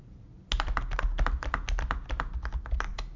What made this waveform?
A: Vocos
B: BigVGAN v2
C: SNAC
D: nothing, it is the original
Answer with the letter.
D